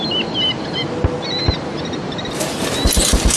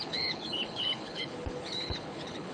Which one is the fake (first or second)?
second